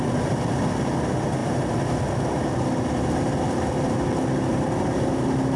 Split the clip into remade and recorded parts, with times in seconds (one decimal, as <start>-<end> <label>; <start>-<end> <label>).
0.0-5.6 recorded